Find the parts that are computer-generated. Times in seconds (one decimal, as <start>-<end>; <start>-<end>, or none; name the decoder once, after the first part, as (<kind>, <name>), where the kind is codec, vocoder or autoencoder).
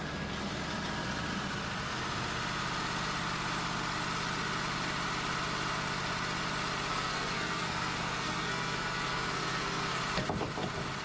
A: 6.9-10.0 (codec, SNAC)